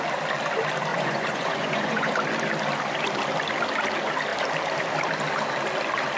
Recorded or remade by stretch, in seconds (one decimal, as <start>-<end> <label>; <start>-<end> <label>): 0.0-0.9 recorded; 0.9-2.1 remade; 2.1-6.2 recorded